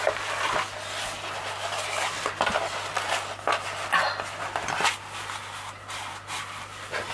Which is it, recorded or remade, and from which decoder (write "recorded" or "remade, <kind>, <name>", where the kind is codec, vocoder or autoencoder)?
recorded